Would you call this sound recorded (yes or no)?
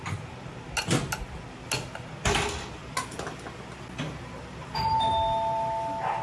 yes